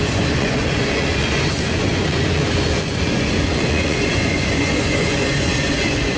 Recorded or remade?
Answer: remade